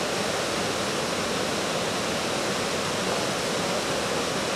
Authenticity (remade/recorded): recorded